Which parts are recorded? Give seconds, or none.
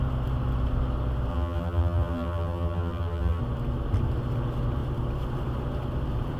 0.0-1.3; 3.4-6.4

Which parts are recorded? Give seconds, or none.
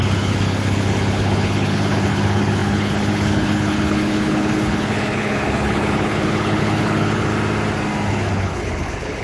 7.3-8.1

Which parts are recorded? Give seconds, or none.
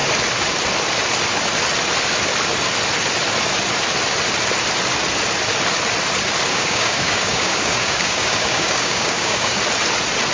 0.0-6.5; 9.6-10.3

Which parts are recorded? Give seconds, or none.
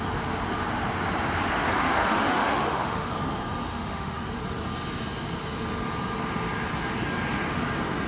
0.0-1.7; 3.1-3.7; 4.3-8.1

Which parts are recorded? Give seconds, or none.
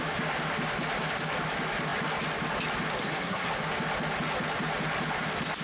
0.0-3.0; 3.5-5.6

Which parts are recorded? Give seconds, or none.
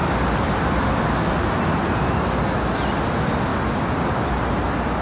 0.0-5.0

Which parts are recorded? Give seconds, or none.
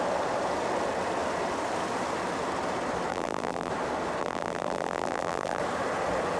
0.0-3.1; 3.7-4.2; 5.6-6.4